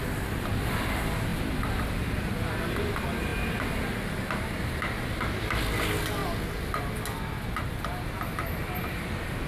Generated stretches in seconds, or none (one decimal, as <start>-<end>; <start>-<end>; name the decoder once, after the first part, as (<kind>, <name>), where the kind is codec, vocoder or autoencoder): 1.3-2.2 (vocoder, BigVGAN v2)